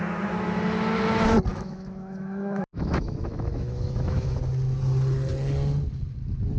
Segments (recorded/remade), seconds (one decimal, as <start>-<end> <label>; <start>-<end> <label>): 0.0-1.5 recorded; 1.5-4.4 remade; 4.4-6.6 recorded